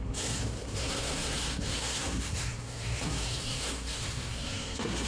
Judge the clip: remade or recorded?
remade